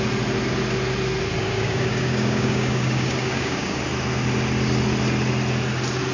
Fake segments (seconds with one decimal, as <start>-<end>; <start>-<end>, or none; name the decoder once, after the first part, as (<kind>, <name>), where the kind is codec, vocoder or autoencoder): 1.4-3.8 (codec, DAC)